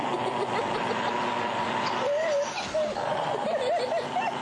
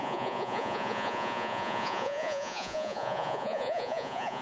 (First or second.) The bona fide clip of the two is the first